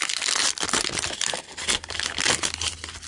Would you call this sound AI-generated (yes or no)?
no